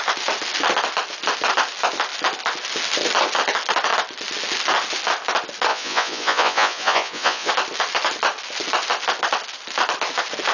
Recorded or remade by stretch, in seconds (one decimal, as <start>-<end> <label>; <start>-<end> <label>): 0.0-5.7 recorded; 5.7-7.5 remade; 7.5-10.5 recorded